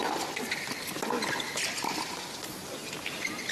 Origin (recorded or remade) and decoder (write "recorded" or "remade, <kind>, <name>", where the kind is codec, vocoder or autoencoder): recorded